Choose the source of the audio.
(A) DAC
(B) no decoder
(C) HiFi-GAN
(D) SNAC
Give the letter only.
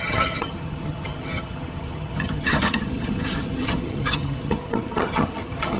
C